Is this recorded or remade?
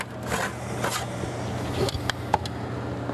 recorded